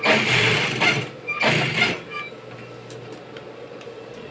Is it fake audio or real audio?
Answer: real